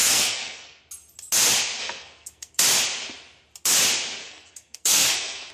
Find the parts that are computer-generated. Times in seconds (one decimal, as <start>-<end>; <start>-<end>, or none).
0.0-0.8; 1.8-2.6; 4.2-5.5